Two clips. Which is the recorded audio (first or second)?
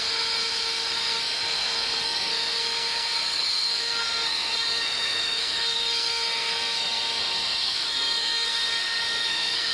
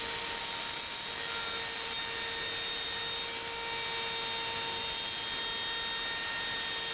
second